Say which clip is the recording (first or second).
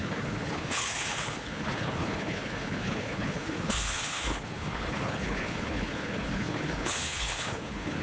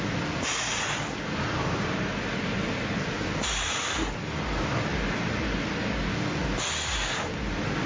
second